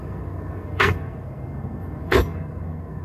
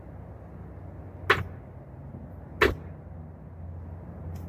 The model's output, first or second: first